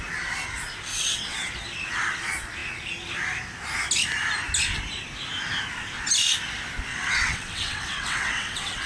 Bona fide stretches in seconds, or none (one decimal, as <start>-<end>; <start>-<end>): 0.0-0.9; 1.5-6.9